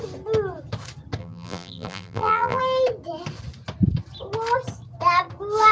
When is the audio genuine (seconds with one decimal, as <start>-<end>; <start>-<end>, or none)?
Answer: 0.0-1.2; 2.6-5.7